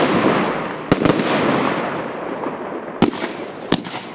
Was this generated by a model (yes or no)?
no